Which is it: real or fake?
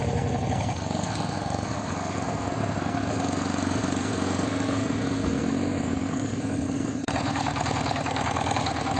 fake